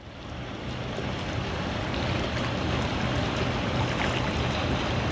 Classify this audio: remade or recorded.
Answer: recorded